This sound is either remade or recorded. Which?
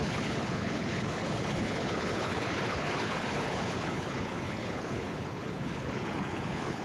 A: remade